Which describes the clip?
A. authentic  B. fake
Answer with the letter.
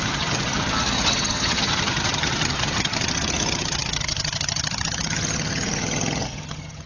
B